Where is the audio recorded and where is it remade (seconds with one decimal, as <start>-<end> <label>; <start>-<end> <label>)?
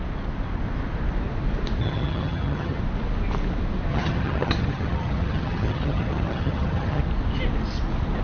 0.0-1.8 recorded; 1.8-2.8 remade; 2.8-3.9 recorded; 3.9-7.0 remade; 7.0-8.2 recorded